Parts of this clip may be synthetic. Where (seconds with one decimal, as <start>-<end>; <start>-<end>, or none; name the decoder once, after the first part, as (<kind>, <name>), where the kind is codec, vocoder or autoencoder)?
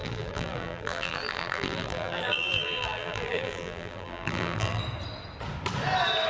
0.0-4.8 (vocoder, BigVGAN v2)